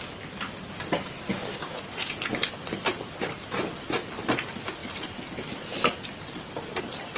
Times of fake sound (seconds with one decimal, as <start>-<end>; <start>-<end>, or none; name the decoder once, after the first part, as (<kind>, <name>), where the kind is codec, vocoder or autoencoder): none